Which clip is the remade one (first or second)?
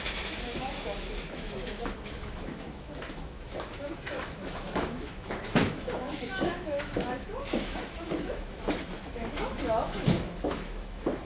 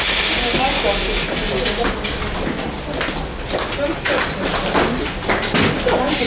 first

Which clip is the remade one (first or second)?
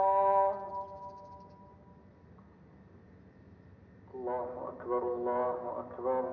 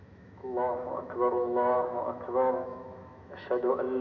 second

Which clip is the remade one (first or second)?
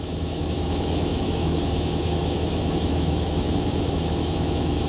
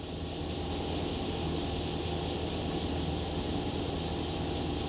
first